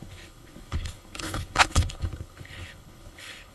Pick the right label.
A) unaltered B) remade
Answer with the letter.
B